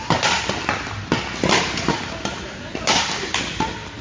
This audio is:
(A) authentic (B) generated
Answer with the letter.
A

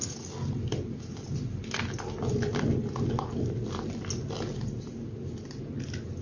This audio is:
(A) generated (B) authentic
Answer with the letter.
B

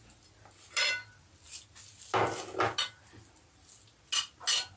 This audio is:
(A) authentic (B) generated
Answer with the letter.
A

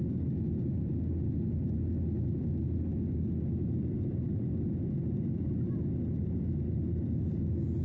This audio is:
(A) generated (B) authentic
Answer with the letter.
B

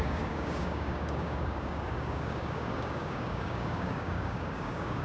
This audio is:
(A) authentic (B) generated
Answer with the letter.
B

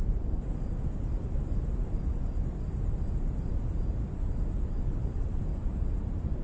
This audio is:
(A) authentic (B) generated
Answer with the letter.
A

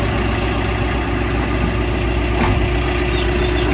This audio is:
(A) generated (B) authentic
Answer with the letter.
B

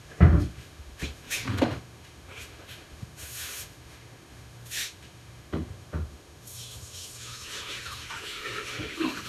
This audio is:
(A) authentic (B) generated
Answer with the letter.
B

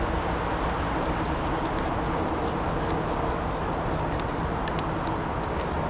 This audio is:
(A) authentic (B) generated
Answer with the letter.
A